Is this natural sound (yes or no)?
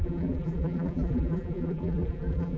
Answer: no